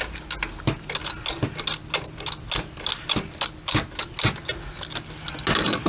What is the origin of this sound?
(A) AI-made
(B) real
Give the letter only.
B